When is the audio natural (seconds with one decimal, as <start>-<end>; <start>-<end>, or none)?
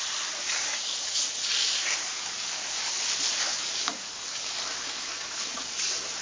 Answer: 0.0-0.5; 1.2-1.6; 3.0-3.5; 5.7-6.2